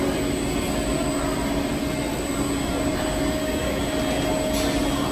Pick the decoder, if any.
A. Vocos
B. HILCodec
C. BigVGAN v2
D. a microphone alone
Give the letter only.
D